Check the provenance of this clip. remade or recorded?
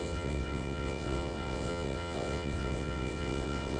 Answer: remade